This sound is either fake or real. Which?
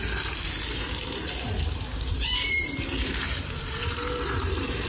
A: fake